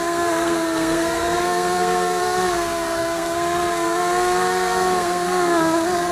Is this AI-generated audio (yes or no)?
yes